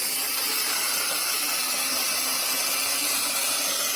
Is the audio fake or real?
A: real